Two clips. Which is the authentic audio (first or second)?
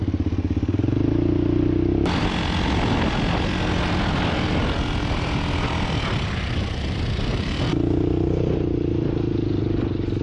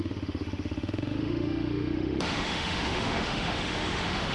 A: first